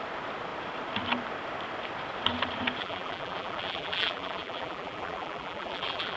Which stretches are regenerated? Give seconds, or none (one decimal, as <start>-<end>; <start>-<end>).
2.8-6.2